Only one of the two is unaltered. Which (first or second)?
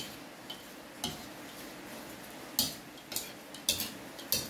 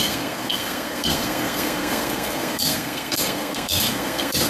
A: first